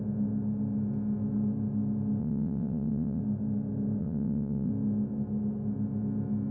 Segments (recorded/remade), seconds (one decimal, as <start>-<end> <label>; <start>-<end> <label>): 0.0-2.2 recorded; 2.2-3.2 remade; 3.2-4.0 recorded; 4.0-4.7 remade; 4.7-6.5 recorded